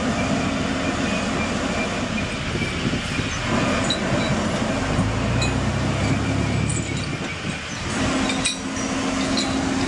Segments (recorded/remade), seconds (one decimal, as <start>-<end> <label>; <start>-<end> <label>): 0.0-9.9 recorded